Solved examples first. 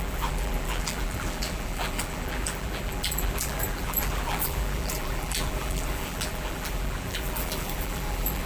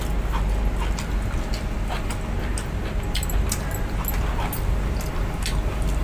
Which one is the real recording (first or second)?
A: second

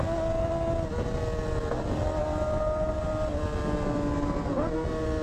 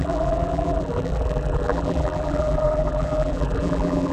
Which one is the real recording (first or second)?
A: first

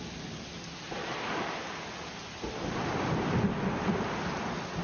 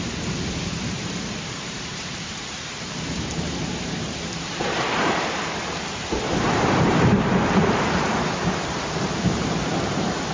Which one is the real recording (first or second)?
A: first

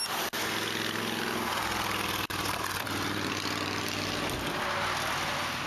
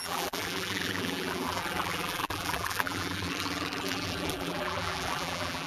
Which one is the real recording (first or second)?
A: first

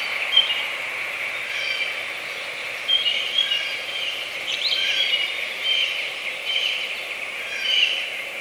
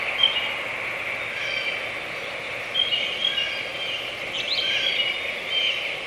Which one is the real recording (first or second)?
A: second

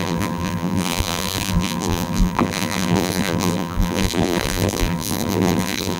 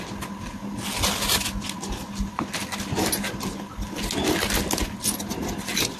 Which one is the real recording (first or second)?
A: second